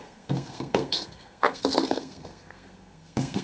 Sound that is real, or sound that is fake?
fake